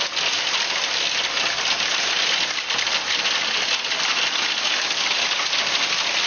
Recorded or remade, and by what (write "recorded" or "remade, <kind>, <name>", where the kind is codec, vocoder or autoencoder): recorded